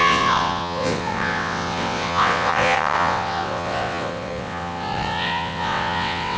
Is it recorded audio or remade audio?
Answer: remade